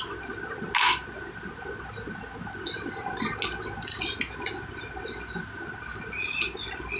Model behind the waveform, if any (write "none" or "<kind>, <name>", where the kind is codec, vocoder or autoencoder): none